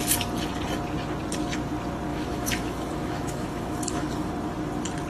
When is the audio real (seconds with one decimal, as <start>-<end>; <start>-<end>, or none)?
0.0-2.1; 4.3-5.1